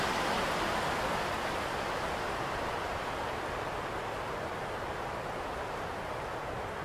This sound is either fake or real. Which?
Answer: real